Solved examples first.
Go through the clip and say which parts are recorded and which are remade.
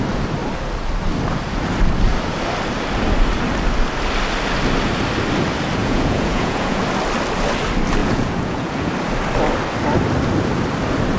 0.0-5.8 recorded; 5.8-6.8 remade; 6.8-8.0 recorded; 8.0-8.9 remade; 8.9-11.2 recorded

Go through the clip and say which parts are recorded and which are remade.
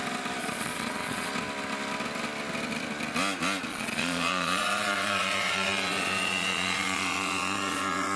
0.0-0.4 recorded; 0.4-1.3 remade; 1.3-3.7 recorded; 3.7-8.2 remade